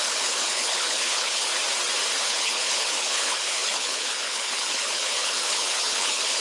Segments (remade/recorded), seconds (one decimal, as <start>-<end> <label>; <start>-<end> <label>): 0.0-1.5 remade; 1.5-2.2 recorded; 2.2-6.4 remade